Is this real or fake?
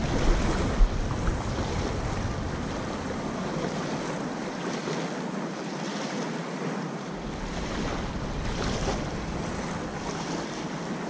real